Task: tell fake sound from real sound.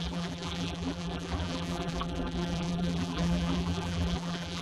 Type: fake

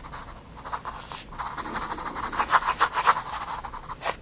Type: real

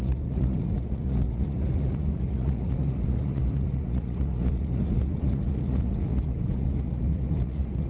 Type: fake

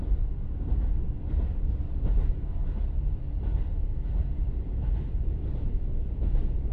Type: fake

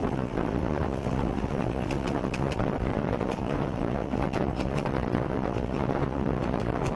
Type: fake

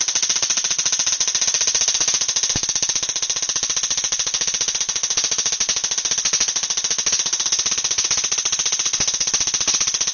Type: real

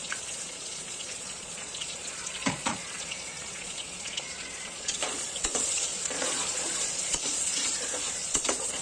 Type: fake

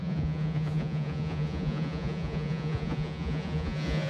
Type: fake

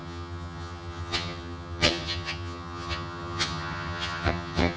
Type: fake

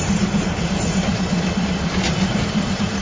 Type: real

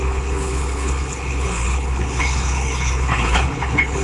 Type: fake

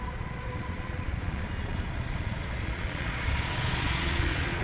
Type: fake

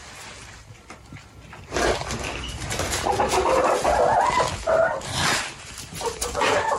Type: real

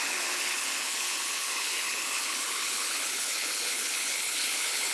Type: fake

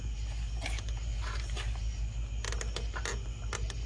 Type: real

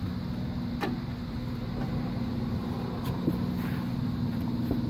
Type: real